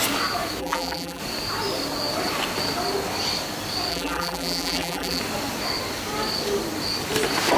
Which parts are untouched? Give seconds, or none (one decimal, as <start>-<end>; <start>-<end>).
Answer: 0.0-0.6; 1.2-3.9; 5.2-7.6